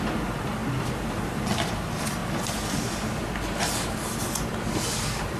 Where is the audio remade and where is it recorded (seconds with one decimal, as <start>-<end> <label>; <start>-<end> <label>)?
0.0-5.4 recorded

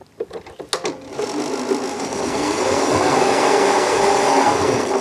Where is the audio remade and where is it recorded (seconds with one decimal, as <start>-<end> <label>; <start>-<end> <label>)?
0.0-1.9 recorded; 1.9-5.0 remade

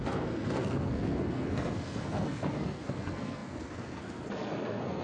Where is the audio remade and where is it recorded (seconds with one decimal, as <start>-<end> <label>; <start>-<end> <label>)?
0.0-5.0 remade

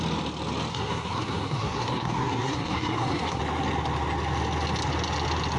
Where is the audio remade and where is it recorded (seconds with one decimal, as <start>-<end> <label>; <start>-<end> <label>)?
0.0-0.7 recorded; 0.7-3.4 remade; 3.4-5.6 recorded

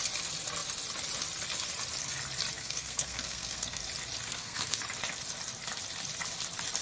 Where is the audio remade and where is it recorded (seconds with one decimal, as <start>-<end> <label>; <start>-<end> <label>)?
0.0-2.6 recorded; 2.6-3.8 remade; 3.8-4.3 recorded; 4.3-4.8 remade; 4.8-6.8 recorded

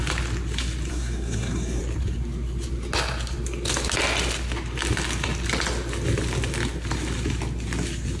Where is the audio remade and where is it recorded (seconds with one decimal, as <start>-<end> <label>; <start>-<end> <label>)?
0.0-0.9 recorded; 0.9-1.8 remade; 1.8-8.2 recorded